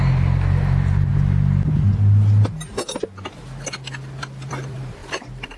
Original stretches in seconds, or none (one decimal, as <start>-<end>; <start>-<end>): 1.1-4.5